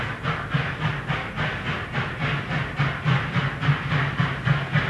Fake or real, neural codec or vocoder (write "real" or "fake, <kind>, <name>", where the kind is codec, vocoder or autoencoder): real